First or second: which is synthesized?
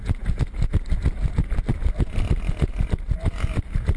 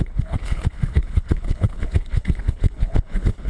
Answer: second